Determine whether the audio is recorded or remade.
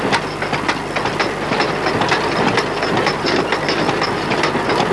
recorded